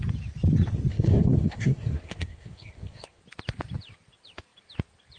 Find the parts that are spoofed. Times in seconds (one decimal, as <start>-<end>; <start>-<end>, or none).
0.9-3.2

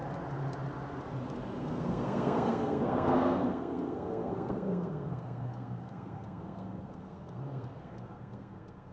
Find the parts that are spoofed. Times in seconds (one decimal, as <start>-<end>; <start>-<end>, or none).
1.6-8.9

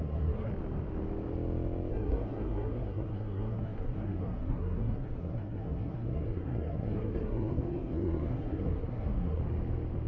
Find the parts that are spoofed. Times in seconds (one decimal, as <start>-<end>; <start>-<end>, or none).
0.0-0.5; 1.9-9.4

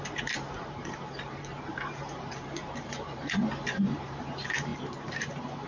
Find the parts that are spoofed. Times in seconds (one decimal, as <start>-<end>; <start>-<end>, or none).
0.0-5.7

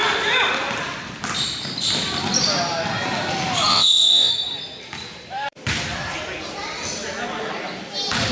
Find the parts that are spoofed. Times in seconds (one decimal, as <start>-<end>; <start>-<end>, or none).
3.7-4.3

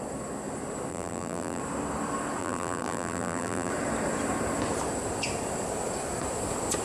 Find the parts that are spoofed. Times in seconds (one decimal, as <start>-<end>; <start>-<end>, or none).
0.9-1.6; 2.4-3.7

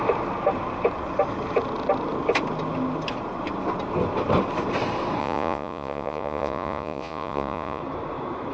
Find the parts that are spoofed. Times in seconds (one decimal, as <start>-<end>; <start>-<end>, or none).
5.2-7.8